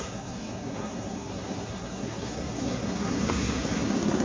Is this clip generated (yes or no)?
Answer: yes